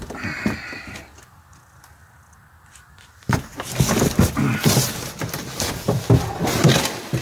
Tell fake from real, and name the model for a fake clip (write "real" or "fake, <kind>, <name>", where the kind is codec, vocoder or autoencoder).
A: real